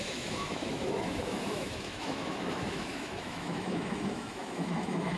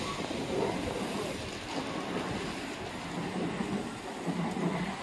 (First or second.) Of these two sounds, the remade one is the first